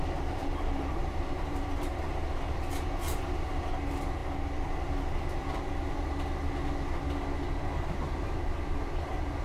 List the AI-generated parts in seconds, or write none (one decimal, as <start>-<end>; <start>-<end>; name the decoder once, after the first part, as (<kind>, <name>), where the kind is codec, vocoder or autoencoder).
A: 0.4-2.1 (vocoder, BigVGAN v2)